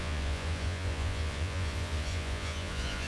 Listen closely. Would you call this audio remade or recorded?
remade